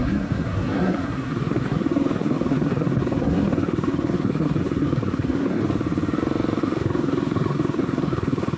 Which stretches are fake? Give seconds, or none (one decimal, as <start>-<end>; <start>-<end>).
0.0-5.6; 6.6-8.6